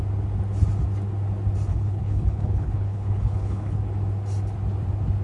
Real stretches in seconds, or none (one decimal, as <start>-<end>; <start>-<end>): 0.0-1.7; 3.8-5.2